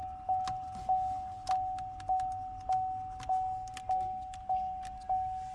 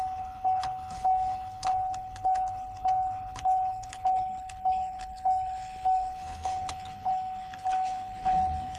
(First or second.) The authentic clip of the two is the first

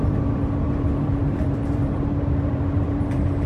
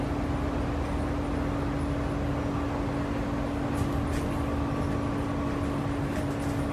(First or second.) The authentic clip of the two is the second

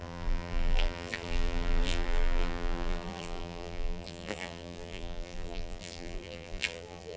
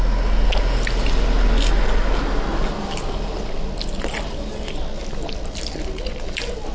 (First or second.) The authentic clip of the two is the second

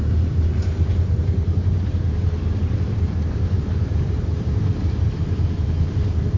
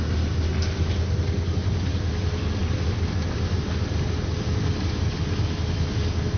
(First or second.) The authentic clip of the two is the second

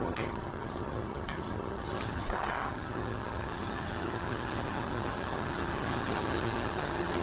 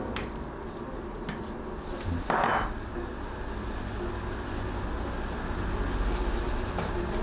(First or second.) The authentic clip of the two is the second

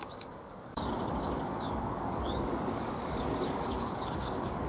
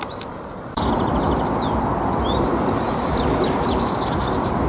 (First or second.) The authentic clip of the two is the second